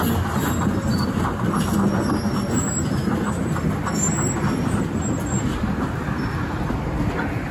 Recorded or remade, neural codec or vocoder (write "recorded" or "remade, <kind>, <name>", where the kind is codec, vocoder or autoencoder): recorded